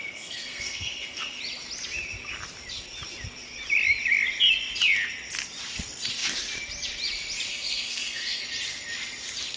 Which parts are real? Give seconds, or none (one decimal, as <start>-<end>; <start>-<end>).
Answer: 1.4-7.5; 8.4-9.6